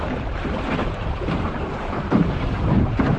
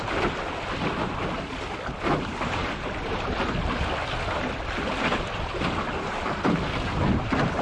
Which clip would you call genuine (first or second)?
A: second